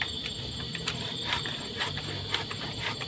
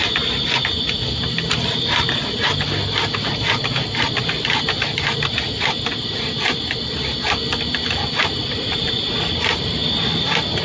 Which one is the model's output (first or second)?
first